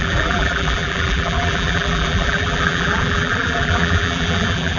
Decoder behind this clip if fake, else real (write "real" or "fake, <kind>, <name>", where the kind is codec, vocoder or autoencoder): fake, vocoder, BigVGAN v2